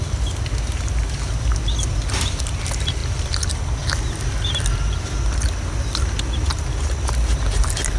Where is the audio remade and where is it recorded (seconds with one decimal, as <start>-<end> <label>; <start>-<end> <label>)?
0.0-8.0 recorded

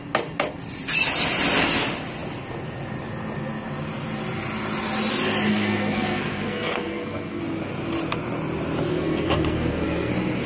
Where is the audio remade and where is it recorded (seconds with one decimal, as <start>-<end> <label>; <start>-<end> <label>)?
0.0-5.5 recorded; 5.5-7.4 remade; 7.4-8.9 recorded; 8.9-10.1 remade; 10.1-10.5 recorded

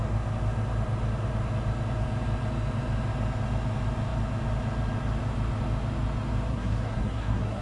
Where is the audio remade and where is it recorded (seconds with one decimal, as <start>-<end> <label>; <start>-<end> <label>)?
0.0-6.5 recorded; 6.5-7.6 remade

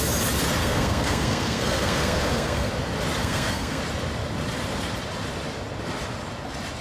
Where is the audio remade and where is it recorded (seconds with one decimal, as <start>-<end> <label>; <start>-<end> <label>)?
0.0-0.6 recorded; 0.6-2.7 remade; 2.7-3.2 recorded; 3.2-3.8 remade; 3.8-6.8 recorded

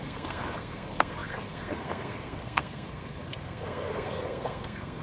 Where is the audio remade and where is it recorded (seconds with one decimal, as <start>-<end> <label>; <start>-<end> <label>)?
0.0-5.0 remade

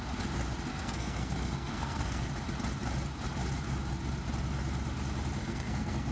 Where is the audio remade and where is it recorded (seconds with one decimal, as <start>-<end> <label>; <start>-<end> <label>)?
0.0-0.7 recorded; 0.7-2.3 remade; 2.3-5.4 recorded; 5.4-6.1 remade

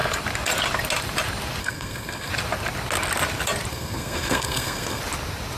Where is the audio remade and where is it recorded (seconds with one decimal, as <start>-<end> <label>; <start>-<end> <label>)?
0.0-1.6 recorded; 1.6-2.3 remade; 2.3-3.7 recorded; 3.7-5.0 remade; 5.0-5.6 recorded

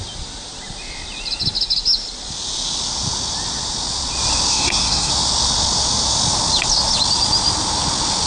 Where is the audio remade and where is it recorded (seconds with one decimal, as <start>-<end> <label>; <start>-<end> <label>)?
0.0-4.5 recorded; 4.5-5.1 remade; 5.1-8.3 recorded